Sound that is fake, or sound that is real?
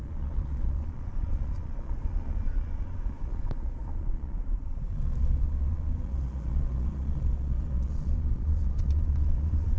fake